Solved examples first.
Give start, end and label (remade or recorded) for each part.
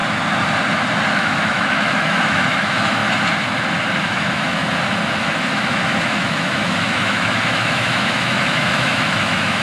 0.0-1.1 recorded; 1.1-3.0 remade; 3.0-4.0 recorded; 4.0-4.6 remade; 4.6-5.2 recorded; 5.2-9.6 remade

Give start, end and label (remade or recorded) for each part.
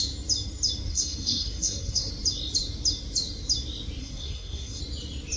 0.0-0.9 recorded; 0.9-2.1 remade; 2.1-4.0 recorded; 4.0-4.8 remade; 4.8-5.4 recorded